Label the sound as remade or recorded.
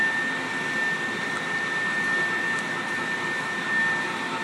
recorded